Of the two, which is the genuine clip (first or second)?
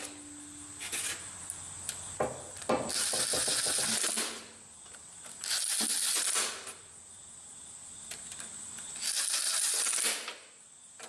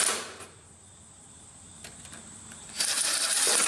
first